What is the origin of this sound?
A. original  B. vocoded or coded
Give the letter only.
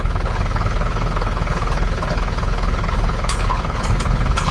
B